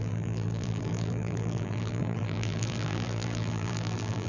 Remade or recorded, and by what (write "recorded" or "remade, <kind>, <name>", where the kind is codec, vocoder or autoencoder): remade, vocoder, BigVGAN v2